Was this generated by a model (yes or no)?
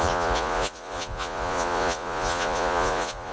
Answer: yes